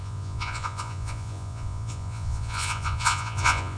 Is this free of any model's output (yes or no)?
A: no